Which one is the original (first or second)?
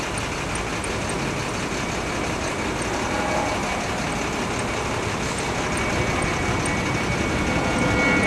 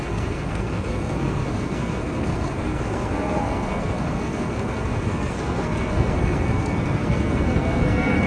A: first